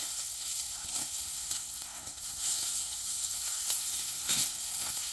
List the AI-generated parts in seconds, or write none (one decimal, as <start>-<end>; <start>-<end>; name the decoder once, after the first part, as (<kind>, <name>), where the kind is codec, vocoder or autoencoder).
0.0-5.1 (codec, SNAC)